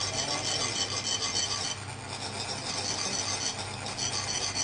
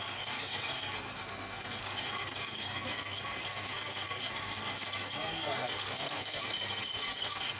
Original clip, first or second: first